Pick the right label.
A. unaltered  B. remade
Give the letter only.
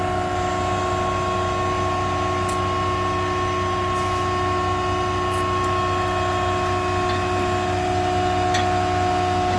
A